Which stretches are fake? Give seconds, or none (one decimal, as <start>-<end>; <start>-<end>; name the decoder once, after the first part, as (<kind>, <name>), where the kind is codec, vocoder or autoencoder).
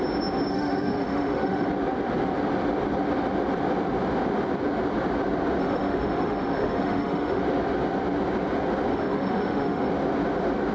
0.5-1.7 (autoencoder, DAC-VAE); 5.6-7.4; 8.9-9.9